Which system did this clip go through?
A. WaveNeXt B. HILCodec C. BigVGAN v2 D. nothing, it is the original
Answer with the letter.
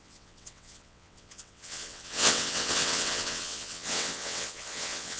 A